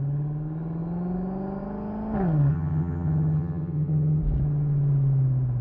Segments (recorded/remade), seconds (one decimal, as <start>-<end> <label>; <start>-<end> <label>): 0.0-2.5 recorded; 2.5-4.2 remade; 4.2-5.6 recorded